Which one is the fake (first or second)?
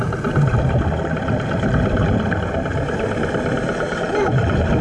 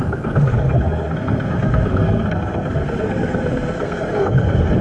second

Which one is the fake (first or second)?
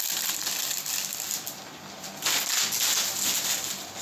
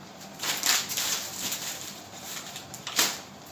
second